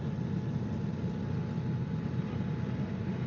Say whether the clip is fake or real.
real